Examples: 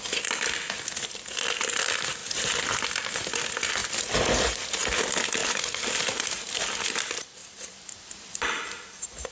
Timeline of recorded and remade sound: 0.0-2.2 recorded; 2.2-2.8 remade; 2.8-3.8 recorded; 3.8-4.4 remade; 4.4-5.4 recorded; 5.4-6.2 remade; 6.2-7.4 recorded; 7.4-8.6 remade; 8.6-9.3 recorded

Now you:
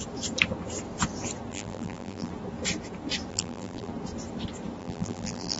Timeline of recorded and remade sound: 0.0-1.5 recorded; 1.5-2.3 remade; 2.3-3.3 recorded; 3.3-3.9 remade; 3.9-4.8 recorded; 4.8-5.6 remade

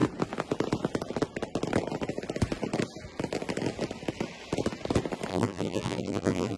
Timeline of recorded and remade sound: 0.0-5.3 recorded; 5.3-6.6 remade

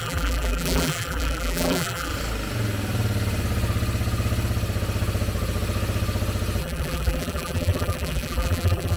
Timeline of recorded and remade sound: 0.0-2.1 remade; 2.1-6.6 recorded; 6.6-9.0 remade

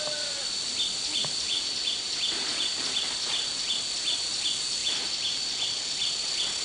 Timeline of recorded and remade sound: 0.0-2.5 recorded; 2.5-3.6 remade; 3.6-4.8 recorded; 4.8-5.5 remade; 5.5-6.6 recorded

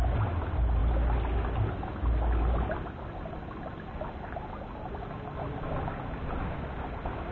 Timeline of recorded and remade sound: 0.0-7.3 recorded

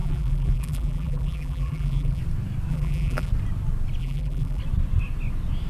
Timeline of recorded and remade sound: 0.0-2.2 remade; 2.2-2.7 recorded; 2.7-3.3 remade; 3.3-4.0 recorded; 4.0-4.6 remade; 4.6-5.7 recorded

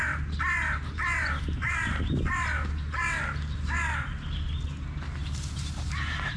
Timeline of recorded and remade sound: 0.0-5.2 recorded; 5.2-6.4 remade